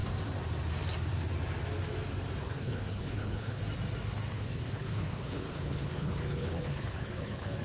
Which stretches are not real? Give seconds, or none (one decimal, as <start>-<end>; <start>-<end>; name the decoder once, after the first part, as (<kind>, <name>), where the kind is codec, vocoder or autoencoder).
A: 2.4-3.6 (codec, HILCodec); 4.3-7.6